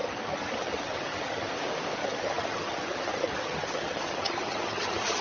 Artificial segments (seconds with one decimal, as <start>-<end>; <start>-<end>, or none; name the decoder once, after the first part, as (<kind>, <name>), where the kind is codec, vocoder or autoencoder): 0.0-1.5 (vocoder, HiFi-GAN); 2.0-5.2